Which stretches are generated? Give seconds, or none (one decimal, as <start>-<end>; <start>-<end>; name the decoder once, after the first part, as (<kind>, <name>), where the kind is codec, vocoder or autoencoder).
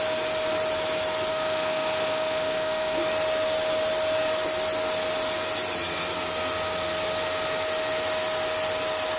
1.3-3.0 (autoencoder, DAC-VAE)